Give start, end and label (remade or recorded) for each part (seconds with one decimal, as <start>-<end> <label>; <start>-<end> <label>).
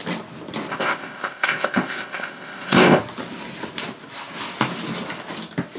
0.0-0.7 recorded; 0.7-3.0 remade; 3.0-5.8 recorded